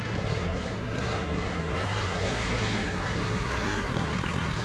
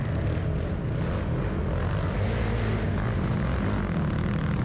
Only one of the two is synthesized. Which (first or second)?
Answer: first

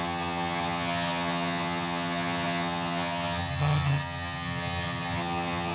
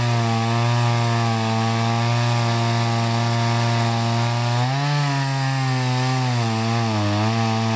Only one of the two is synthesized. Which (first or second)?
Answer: first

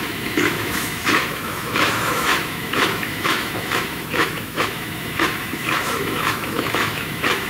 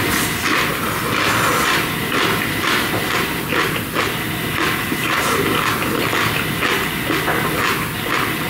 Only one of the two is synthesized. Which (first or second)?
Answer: first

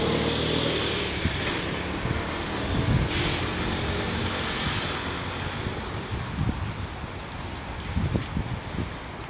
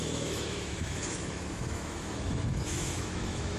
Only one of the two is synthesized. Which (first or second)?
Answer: second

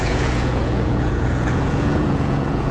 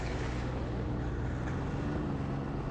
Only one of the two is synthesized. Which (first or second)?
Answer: first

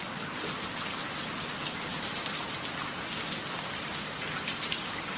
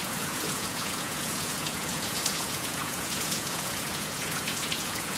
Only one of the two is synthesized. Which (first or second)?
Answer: second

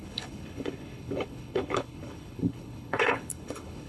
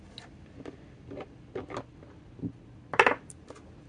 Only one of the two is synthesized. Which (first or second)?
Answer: first